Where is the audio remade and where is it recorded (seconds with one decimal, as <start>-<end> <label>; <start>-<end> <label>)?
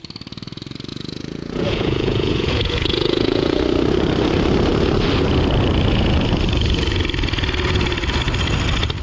0.0-0.9 recorded; 0.9-3.6 remade; 3.6-9.0 recorded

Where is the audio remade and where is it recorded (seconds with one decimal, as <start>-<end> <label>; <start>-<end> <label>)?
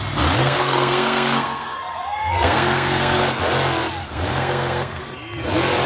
0.0-0.4 recorded; 0.4-3.4 remade; 3.4-4.0 recorded; 4.0-5.0 remade; 5.0-5.9 recorded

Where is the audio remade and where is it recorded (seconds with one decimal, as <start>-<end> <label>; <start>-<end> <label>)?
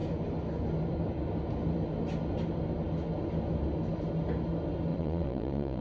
0.0-4.9 recorded; 4.9-5.8 remade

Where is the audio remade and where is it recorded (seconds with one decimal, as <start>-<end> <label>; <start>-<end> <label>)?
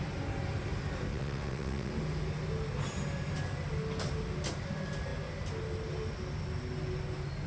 0.0-1.1 recorded; 1.1-1.9 remade; 1.9-7.5 recorded